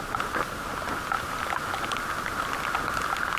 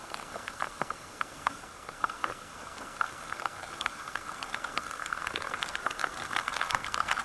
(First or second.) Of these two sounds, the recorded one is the first